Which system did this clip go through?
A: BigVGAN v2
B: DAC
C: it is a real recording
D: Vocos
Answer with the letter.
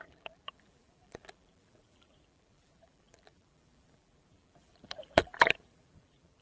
A